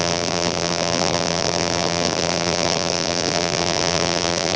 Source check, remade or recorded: remade